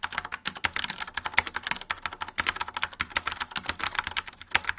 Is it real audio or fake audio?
real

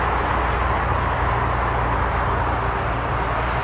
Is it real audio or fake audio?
real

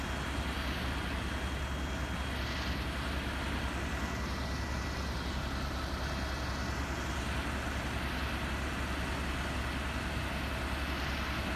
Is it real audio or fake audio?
real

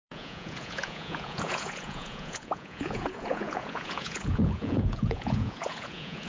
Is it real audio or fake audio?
fake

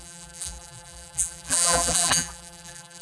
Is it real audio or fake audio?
fake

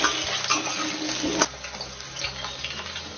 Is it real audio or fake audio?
real